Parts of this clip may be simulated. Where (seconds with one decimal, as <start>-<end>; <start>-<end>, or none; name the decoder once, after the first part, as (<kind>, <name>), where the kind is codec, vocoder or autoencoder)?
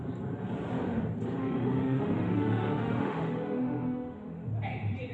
1.4-4.5 (autoencoder, DAC-VAE)